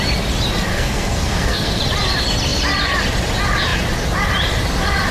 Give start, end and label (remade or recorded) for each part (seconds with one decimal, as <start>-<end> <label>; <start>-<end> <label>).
0.0-0.7 recorded; 0.7-1.8 remade; 1.8-5.1 recorded